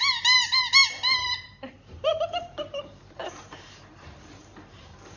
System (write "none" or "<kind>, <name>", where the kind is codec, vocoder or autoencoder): vocoder, BigVGAN v2